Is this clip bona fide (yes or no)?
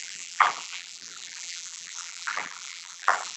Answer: no